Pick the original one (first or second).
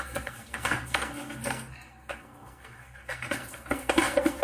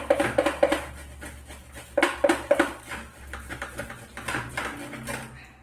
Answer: second